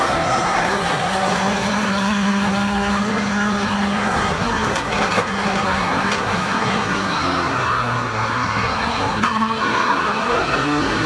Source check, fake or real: fake